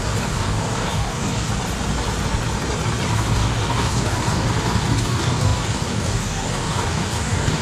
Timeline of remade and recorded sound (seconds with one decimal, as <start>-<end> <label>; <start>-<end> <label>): 0.0-1.5 remade; 1.5-3.1 recorded; 3.1-7.6 remade